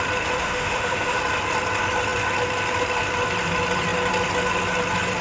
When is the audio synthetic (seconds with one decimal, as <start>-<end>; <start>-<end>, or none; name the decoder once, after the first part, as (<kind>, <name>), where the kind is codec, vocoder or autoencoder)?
0.4-1.2 (autoencoder, DAC-VAE)